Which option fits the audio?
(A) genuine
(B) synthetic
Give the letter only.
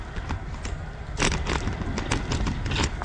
A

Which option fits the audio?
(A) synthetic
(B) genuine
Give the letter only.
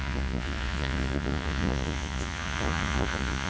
A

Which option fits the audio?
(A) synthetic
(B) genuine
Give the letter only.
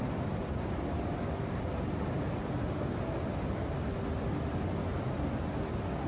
B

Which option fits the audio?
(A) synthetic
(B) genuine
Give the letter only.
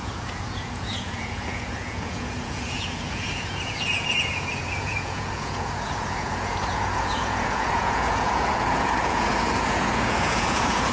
A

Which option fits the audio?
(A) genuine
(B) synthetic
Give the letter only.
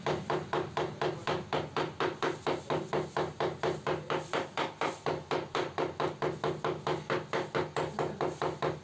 A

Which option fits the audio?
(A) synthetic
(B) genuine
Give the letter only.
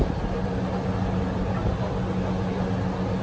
B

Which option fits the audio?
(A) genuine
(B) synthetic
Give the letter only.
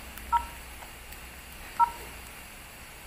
A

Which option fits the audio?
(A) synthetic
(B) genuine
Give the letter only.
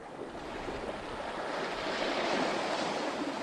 B